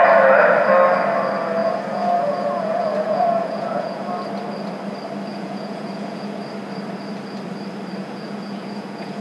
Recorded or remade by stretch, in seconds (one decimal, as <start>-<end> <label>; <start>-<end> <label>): 0.0-1.6 recorded; 1.6-4.1 remade; 4.1-5.3 recorded; 5.3-6.4 remade; 6.4-8.0 recorded; 8.0-9.2 remade